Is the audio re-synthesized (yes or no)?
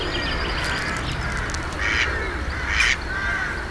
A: no